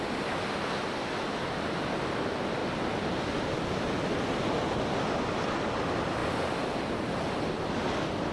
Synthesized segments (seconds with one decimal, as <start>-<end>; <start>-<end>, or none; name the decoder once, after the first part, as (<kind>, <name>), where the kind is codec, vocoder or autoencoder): none